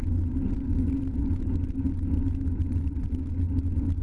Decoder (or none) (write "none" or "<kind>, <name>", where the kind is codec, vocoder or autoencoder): none